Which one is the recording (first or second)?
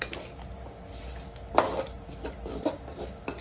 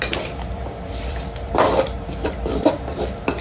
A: first